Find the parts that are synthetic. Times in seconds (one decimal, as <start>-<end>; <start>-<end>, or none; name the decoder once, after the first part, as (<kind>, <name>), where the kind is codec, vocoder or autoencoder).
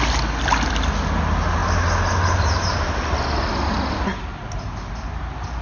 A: none